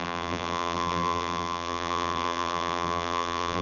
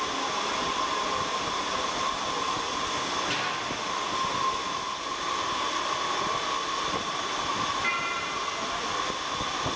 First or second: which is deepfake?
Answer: first